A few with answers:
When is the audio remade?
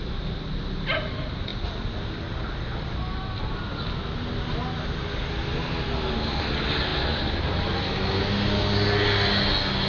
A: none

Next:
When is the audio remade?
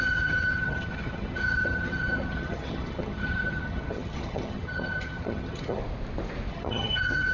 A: 0.0-5.8 (vocoder, HiFi-GAN); 6.5-7.3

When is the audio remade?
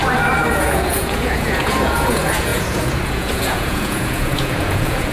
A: 0.5-5.1 (vocoder, Vocos)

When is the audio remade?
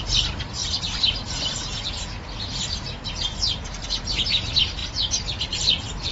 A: 0.6-1.9 (vocoder, BigVGAN v2)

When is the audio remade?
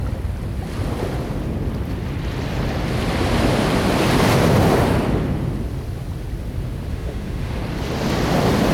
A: 6.9-7.6 (autoencoder, DAC-VAE)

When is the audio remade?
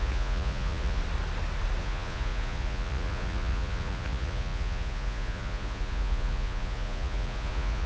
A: 0.0-1.0 (vocoder, Vocos); 1.8-7.9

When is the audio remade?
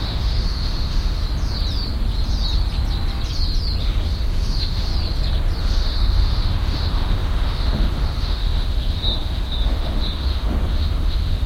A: 0.0-1.2 (autoencoder, DAC-VAE); 3.8-4.9; 5.6-11.5